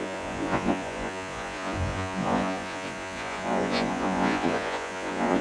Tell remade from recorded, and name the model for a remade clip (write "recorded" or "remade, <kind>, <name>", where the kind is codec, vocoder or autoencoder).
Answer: remade, vocoder, Vocos